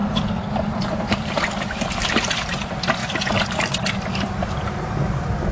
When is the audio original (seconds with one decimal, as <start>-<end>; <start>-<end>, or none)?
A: 3.0-4.3